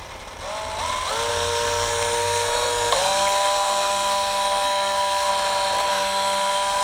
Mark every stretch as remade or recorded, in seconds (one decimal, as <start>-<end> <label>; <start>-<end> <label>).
0.0-1.3 recorded; 1.3-5.3 remade; 5.3-5.9 recorded; 5.9-6.8 remade